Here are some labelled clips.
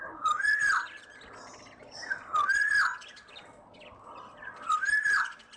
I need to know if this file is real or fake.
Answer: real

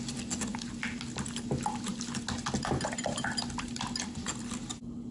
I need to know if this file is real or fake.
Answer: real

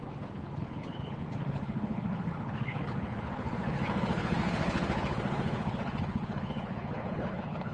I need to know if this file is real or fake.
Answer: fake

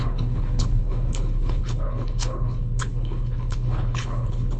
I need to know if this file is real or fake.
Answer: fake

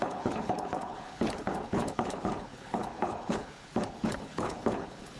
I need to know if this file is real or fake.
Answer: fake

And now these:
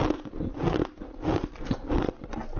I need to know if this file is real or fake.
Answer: real